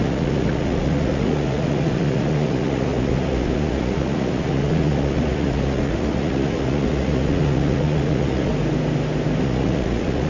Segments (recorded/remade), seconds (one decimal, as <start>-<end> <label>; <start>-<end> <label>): 0.0-8.5 remade; 8.5-9.4 recorded; 9.4-10.3 remade